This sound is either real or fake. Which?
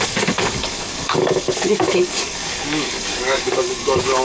fake